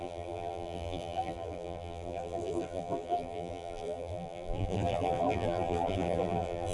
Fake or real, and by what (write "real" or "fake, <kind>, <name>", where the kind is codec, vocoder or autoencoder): fake, vocoder, BigVGAN v2